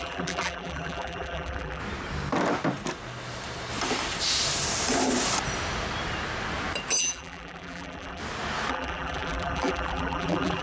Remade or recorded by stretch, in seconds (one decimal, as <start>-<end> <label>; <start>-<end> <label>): 0.0-1.8 remade; 1.8-7.0 recorded; 7.0-8.2 remade; 8.2-8.7 recorded; 8.7-10.6 remade